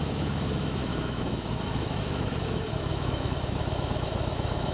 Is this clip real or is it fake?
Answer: fake